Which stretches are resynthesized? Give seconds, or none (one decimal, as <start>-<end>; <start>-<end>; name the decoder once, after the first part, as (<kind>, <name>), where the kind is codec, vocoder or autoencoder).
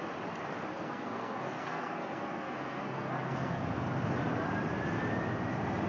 0.7-3.6 (codec, SNAC)